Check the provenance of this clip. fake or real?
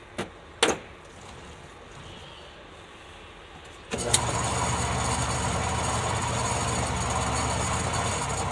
real